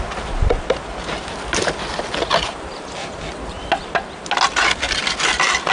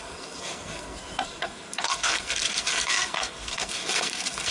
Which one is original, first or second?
first